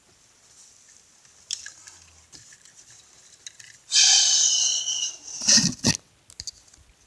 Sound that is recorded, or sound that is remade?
recorded